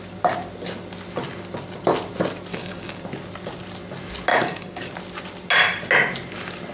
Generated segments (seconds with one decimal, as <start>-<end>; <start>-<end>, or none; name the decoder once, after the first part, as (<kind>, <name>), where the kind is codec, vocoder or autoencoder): 2.5-3.0 (codec, DAC); 4.3-4.9